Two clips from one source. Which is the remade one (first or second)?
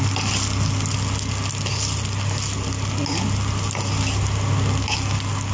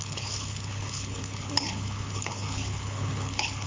second